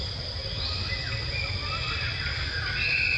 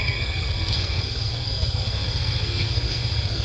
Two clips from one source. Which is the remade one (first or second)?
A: second